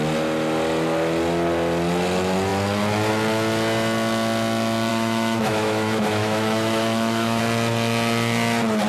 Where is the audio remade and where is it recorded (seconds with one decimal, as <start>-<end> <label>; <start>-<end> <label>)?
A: 0.0-4.9 recorded; 4.9-7.4 remade; 7.4-8.9 recorded